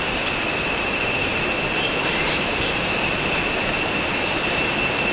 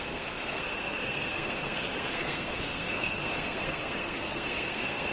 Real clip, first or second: first